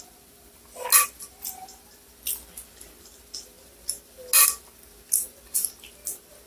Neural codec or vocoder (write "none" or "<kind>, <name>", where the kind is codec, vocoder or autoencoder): none